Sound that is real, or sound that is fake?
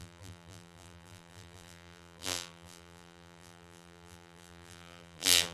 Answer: fake